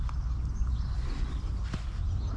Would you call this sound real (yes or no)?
yes